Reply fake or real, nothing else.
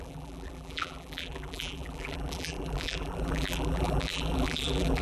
fake